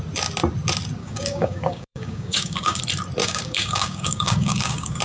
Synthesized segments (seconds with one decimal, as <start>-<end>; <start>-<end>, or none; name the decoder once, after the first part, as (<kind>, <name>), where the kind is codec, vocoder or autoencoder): 1.0-2.8 (codec, DAC); 3.2-5.0